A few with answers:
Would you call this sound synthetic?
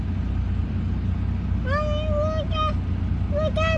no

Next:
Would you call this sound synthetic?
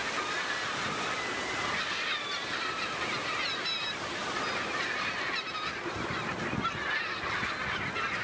no